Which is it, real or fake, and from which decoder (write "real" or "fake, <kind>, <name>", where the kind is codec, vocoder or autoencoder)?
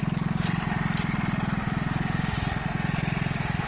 real